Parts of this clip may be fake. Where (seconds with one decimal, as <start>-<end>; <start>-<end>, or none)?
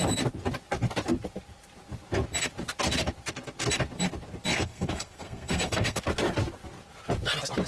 4.5-6.0